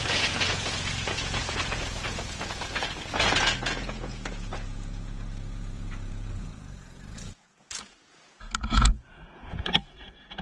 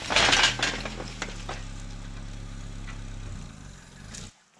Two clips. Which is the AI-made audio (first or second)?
first